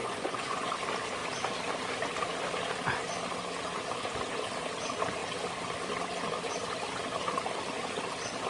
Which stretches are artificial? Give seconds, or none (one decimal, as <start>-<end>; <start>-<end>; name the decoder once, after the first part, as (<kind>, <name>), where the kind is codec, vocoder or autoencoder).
0.0-0.7 (vocoder, Vocos)